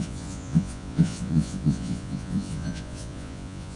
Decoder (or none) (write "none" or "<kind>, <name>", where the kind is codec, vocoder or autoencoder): vocoder, Vocos